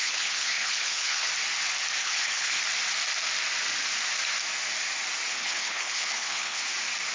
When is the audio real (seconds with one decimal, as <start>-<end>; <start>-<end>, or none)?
1.3-2.0; 2.6-5.3; 6.6-7.1